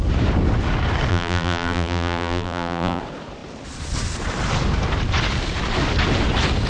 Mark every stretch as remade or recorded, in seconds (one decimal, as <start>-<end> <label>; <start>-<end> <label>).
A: 0.0-1.1 recorded; 1.1-3.0 remade; 3.0-6.7 recorded

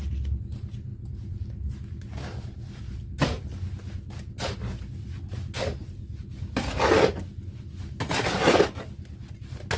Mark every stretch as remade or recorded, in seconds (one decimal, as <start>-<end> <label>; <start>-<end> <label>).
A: 0.0-9.8 recorded

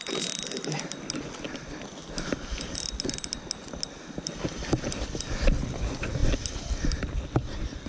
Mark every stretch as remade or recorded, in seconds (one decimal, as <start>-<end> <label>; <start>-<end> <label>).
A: 0.0-7.9 recorded

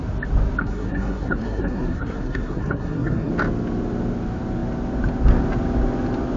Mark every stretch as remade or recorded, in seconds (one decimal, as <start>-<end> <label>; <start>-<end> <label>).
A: 0.0-0.6 recorded; 0.6-3.3 remade; 3.3-6.4 recorded

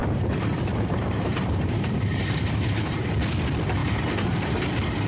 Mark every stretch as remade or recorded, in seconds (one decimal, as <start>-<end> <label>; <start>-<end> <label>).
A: 0.0-3.1 remade; 3.1-3.8 recorded; 3.8-4.6 remade; 4.6-5.1 recorded

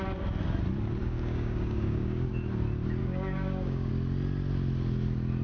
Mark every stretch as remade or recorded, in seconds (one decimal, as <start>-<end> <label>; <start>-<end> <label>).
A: 0.0-1.0 recorded; 1.0-2.3 remade; 2.3-3.0 recorded; 3.0-3.9 remade; 3.9-5.4 recorded